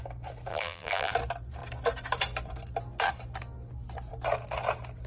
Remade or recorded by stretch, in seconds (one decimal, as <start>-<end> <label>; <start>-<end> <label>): 0.0-0.5 recorded; 0.5-1.1 remade; 1.1-5.1 recorded